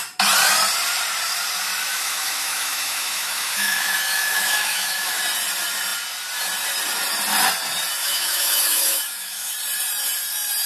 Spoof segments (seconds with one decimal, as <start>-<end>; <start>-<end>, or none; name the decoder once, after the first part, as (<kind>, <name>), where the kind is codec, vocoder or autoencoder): 1.9-5.2 (autoencoder, DAC-VAE); 8.0-9.5